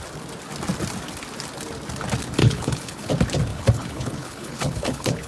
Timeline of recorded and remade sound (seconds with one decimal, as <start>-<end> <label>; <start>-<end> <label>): 0.0-2.4 recorded; 2.4-3.1 remade; 3.1-3.5 recorded; 3.5-5.3 remade